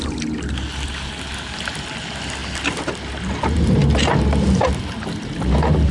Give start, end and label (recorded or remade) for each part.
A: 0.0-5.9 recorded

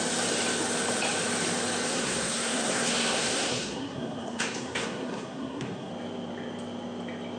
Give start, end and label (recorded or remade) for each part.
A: 0.0-1.9 recorded; 1.9-5.9 remade; 5.9-7.4 recorded

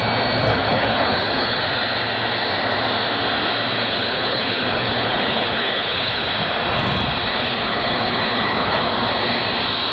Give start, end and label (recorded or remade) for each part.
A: 0.0-0.5 recorded; 0.5-1.6 remade; 1.6-3.7 recorded; 3.7-6.3 remade; 6.3-7.3 recorded; 7.3-8.8 remade; 8.8-9.9 recorded

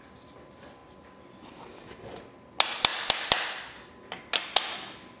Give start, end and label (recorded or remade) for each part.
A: 0.0-5.2 recorded

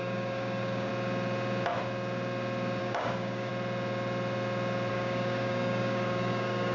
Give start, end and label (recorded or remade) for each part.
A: 0.0-0.9 remade; 0.9-2.8 recorded; 2.8-3.5 remade; 3.5-4.9 recorded; 4.9-6.7 remade

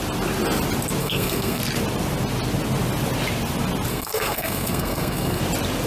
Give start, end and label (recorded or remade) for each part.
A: 0.0-1.0 recorded; 1.0-1.6 remade; 1.6-3.9 recorded; 3.9-5.4 remade; 5.4-5.9 recorded

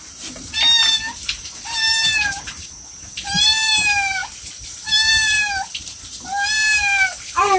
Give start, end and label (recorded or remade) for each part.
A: 0.0-1.2 recorded; 1.2-3.0 remade; 3.0-7.6 recorded

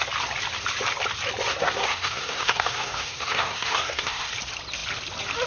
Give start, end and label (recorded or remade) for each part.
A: 0.0-1.5 recorded; 1.5-4.3 remade; 4.3-5.5 recorded